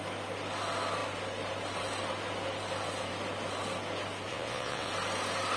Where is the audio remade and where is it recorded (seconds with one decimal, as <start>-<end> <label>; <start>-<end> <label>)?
0.0-4.3 recorded; 4.3-4.9 remade; 4.9-5.6 recorded